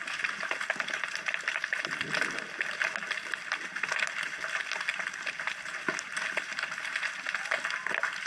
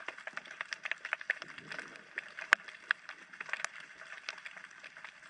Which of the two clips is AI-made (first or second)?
second